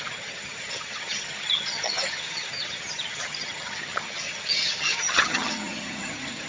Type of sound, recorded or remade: remade